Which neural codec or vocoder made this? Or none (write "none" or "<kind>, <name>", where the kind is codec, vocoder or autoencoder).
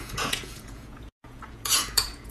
vocoder, Vocos